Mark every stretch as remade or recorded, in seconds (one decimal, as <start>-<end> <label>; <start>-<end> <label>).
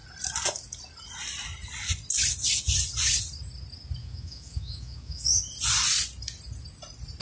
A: 0.0-4.0 recorded; 4.0-5.4 remade; 5.4-7.2 recorded